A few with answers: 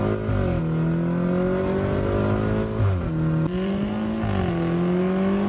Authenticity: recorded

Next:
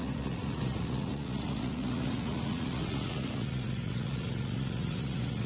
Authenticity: remade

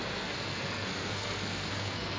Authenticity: remade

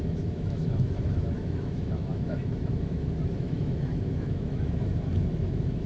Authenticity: remade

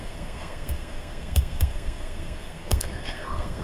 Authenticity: remade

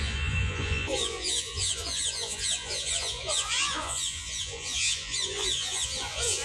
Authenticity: remade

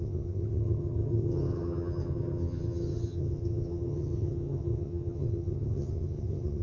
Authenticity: remade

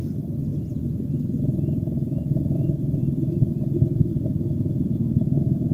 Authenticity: remade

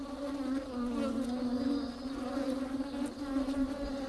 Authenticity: recorded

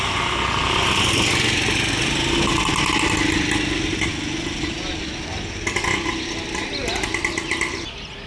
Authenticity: recorded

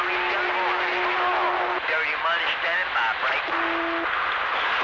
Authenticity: recorded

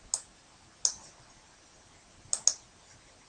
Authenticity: recorded